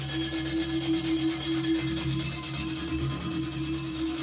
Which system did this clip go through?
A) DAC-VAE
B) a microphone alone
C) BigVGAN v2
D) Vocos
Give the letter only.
B